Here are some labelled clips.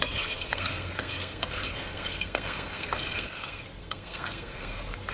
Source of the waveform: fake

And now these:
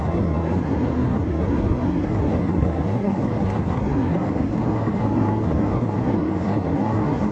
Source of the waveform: fake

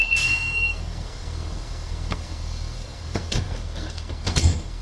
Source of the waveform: fake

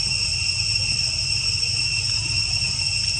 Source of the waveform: real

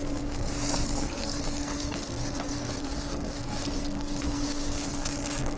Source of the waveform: fake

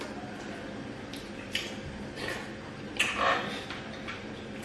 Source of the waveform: real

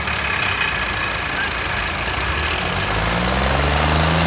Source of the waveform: real